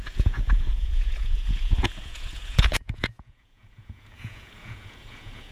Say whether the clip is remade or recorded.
remade